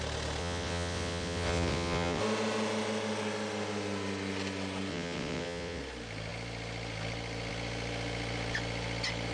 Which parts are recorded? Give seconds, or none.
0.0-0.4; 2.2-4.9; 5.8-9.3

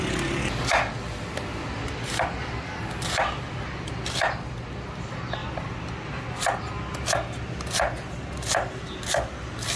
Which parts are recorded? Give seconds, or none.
0.0-9.8

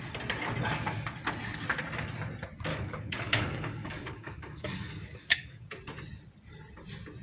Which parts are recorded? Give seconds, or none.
0.0-2.7; 5.6-7.2

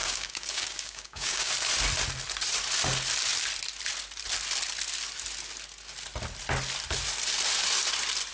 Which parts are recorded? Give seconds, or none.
1.5-8.3

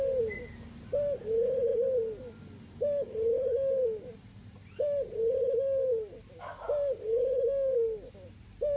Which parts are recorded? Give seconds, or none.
0.0-8.8

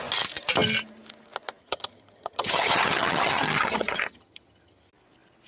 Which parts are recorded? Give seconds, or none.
0.0-1.6; 4.9-5.5

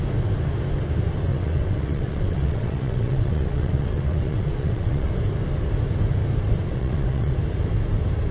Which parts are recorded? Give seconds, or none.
0.0-1.3; 5.1-6.7; 7.3-8.3